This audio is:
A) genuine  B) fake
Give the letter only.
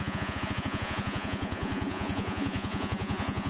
B